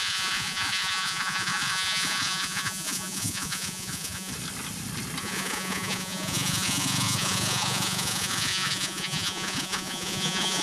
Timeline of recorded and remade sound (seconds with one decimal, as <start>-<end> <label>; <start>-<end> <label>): 0.0-4.3 remade; 4.3-5.2 recorded; 5.2-10.6 remade